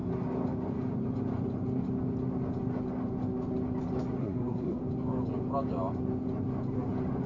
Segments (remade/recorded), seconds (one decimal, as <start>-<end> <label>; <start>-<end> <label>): 0.0-4.2 recorded; 4.2-4.8 remade; 4.8-7.3 recorded